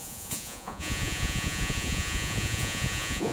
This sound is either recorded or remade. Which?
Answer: remade